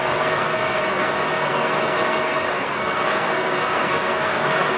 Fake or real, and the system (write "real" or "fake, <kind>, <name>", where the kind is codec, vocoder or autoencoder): fake, codec, SNAC